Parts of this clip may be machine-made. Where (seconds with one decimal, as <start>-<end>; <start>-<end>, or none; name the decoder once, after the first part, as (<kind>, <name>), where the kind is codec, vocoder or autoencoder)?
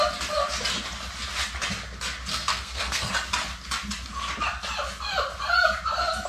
2.3-3.1 (codec, SNAC)